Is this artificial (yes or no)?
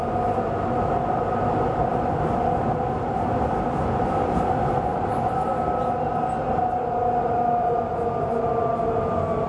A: no